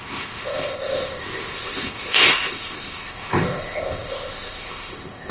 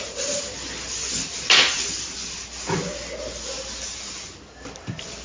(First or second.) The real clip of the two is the second